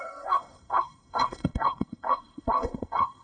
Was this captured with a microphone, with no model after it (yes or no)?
no